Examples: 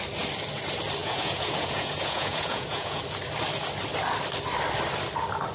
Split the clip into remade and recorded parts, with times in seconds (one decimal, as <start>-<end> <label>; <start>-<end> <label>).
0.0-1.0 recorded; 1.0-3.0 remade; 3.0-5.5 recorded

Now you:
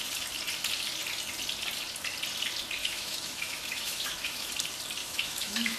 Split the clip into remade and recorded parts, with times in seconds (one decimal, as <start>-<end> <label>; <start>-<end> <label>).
0.0-2.8 recorded; 2.8-4.5 remade; 4.5-5.0 recorded; 5.0-5.8 remade

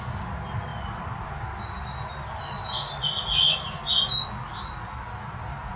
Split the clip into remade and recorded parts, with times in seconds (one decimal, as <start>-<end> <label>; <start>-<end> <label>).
0.0-5.8 recorded

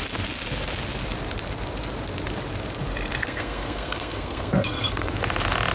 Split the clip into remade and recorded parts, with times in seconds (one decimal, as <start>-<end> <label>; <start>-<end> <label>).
0.0-3.2 recorded; 3.2-5.1 remade; 5.1-5.7 recorded

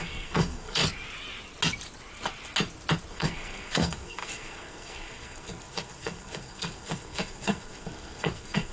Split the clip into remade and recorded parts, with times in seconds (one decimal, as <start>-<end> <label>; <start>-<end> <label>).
0.0-0.8 remade; 0.8-3.1 recorded; 3.1-8.7 remade